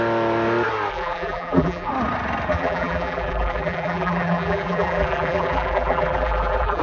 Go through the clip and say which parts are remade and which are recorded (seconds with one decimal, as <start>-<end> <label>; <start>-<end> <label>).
0.0-0.9 recorded; 0.9-1.9 remade; 1.9-2.5 recorded; 2.5-6.8 remade

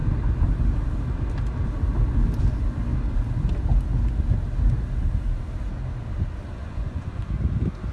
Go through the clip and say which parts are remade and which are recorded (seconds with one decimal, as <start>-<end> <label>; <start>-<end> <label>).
0.0-6.6 recorded; 6.6-7.2 remade; 7.2-7.9 recorded

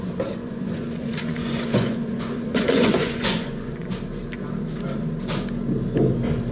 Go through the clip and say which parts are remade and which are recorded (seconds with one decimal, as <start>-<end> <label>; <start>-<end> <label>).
0.0-0.4 recorded; 0.4-3.9 remade; 3.9-6.5 recorded

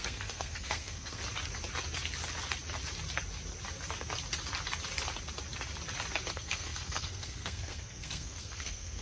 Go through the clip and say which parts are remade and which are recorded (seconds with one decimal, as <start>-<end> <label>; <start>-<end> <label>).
0.0-1.2 remade; 1.2-6.3 recorded; 6.3-9.0 remade